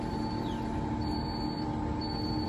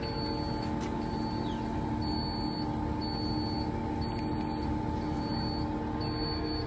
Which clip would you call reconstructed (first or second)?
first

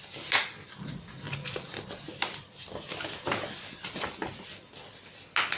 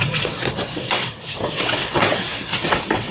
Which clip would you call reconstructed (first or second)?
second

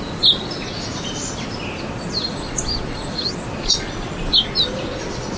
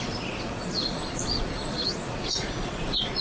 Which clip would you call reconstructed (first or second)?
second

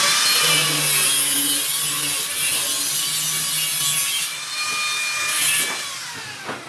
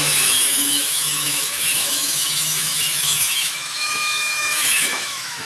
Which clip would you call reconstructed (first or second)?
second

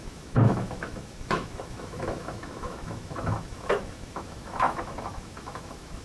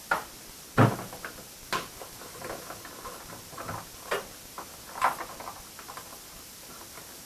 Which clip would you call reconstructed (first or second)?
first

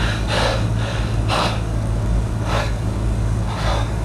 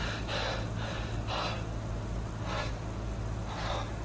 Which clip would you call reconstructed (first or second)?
first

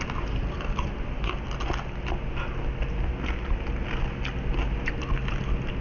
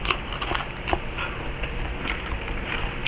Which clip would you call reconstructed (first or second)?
second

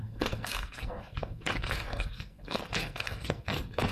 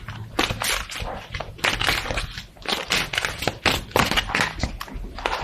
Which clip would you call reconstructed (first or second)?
first